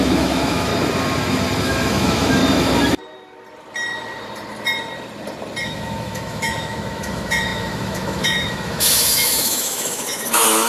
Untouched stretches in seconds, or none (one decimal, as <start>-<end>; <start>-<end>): 0.7-1.6; 2.4-5.6